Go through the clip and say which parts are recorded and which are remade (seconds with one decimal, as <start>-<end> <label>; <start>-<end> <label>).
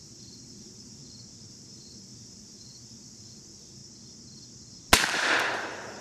0.0-1.0 remade; 1.0-1.5 recorded; 1.5-3.8 remade; 3.8-5.3 recorded; 5.3-6.0 remade